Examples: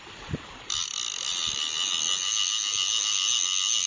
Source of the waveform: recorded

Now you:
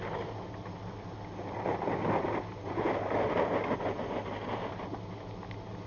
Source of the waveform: recorded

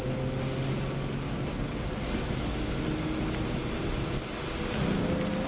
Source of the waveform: recorded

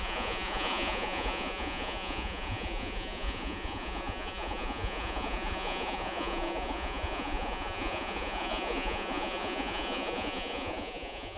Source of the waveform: remade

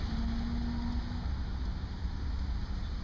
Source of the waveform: recorded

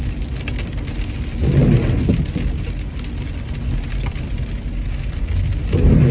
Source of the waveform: recorded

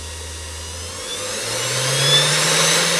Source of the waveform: recorded